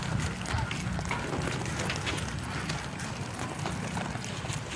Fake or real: real